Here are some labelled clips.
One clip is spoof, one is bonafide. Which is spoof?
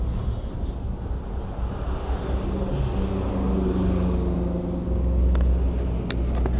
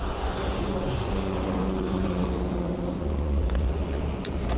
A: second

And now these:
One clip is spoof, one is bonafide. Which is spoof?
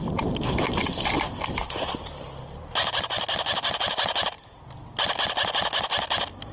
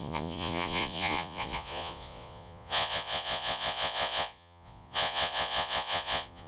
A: second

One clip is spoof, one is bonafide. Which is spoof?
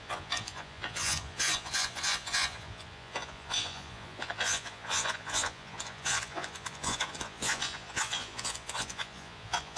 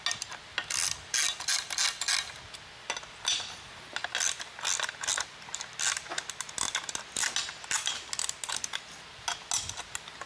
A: first